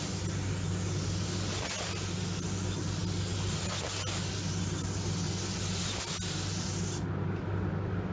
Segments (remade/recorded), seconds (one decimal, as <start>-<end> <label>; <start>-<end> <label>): 0.0-8.1 recorded